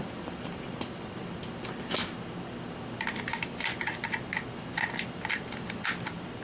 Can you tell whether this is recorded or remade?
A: recorded